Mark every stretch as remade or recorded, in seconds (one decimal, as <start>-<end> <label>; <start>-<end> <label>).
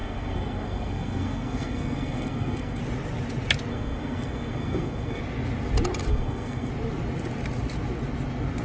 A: 0.0-2.8 remade; 2.8-3.7 recorded; 3.7-5.2 remade; 5.2-6.1 recorded; 6.1-6.7 remade; 6.7-8.6 recorded